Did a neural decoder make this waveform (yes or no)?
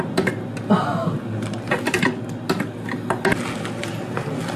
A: no